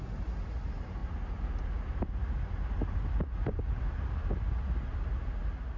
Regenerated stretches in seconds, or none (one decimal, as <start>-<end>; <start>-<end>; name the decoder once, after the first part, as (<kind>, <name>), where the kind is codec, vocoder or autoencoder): none